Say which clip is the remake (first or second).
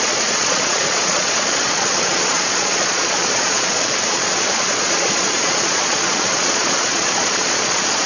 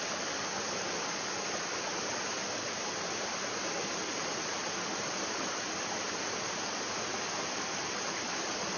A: first